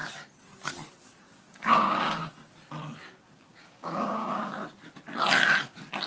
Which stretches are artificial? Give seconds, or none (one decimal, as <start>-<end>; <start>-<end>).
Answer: 1.3-2.2; 3.5-4.5